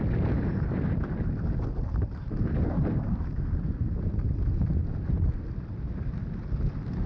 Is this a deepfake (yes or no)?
no